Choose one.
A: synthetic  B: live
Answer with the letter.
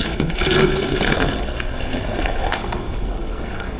A